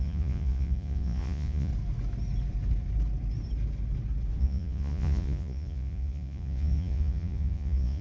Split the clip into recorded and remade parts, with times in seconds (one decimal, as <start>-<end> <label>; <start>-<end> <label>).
0.0-1.7 remade; 1.7-4.4 recorded; 4.4-8.0 remade

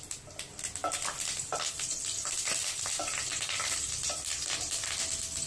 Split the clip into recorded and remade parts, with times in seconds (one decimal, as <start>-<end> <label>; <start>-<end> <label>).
0.0-5.5 recorded

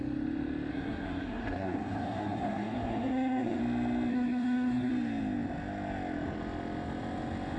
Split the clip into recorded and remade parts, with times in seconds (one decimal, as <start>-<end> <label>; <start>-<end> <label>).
0.0-0.7 recorded; 0.7-3.6 remade; 3.6-4.1 recorded; 4.1-4.9 remade; 4.9-7.6 recorded

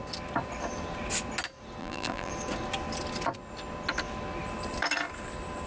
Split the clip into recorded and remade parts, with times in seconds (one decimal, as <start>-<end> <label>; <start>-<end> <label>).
0.0-1.8 recorded; 1.8-2.3 remade; 2.3-5.7 recorded

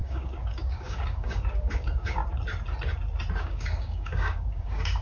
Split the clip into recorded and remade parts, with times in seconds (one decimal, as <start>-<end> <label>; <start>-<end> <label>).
0.0-2.2 remade; 2.2-3.4 recorded; 3.4-5.0 remade

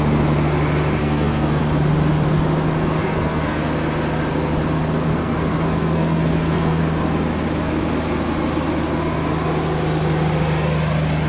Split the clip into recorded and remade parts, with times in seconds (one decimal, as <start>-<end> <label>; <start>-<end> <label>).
0.0-1.0 recorded; 1.0-1.6 remade; 1.6-3.0 recorded; 3.0-3.6 remade; 3.6-5.1 recorded; 5.1-6.8 remade; 6.8-11.3 recorded

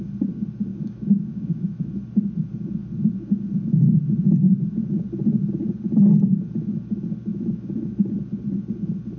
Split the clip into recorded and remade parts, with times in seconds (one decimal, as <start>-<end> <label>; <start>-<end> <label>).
0.0-0.7 recorded; 0.7-1.9 remade; 1.9-7.3 recorded; 7.3-8.1 remade; 8.1-9.2 recorded